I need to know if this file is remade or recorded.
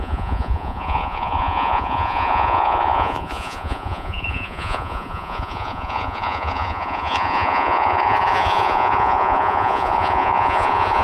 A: remade